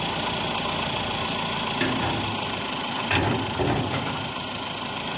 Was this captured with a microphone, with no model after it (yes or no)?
yes